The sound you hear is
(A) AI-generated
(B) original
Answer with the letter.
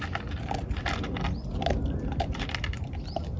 B